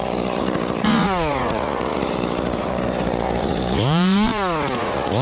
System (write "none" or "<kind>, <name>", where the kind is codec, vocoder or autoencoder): vocoder, Vocos